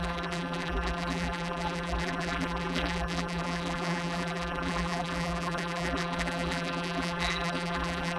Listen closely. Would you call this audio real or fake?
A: fake